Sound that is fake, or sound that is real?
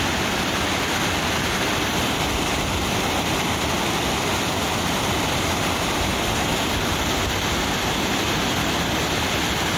real